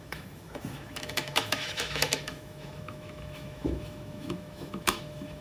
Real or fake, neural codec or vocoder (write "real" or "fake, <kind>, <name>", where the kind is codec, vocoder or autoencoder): fake, autoencoder, DAC-VAE